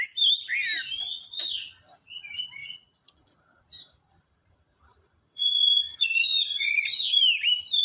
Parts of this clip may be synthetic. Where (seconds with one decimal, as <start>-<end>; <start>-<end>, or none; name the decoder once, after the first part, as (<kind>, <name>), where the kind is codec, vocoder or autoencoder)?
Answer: 1.1-2.2 (vocoder, Vocos); 2.6-7.2